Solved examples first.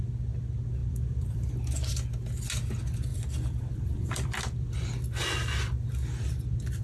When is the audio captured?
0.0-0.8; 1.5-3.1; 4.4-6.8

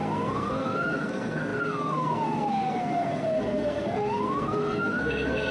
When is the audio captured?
none